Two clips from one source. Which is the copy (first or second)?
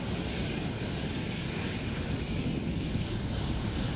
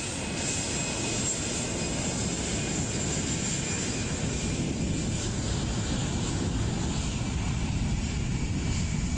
first